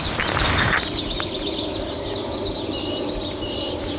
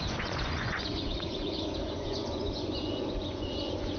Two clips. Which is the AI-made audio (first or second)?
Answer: second